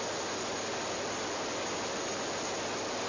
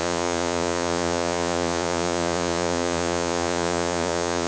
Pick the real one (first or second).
first